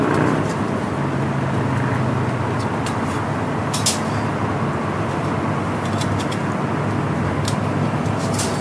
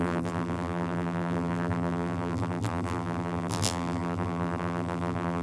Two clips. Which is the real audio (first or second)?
first